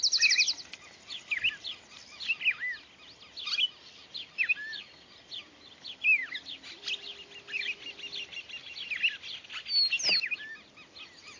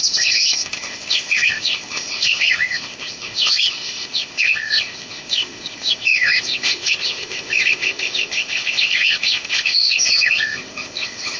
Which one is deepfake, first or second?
second